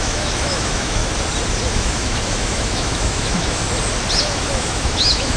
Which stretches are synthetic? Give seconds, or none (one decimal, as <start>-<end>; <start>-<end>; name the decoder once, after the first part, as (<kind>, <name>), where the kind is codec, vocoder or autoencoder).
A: 0.0-1.0 (autoencoder, DAC-VAE); 1.7-3.6; 4.2-5.4